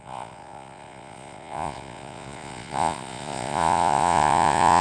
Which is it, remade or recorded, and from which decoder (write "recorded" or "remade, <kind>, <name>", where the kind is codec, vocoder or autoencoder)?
remade, vocoder, Vocos